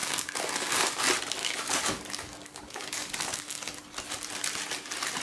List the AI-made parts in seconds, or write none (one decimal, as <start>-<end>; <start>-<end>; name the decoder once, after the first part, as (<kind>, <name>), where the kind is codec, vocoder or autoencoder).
0.0-1.0 (codec, DAC); 1.4-3.8